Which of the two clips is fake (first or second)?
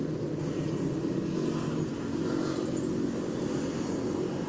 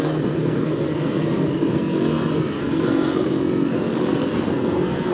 second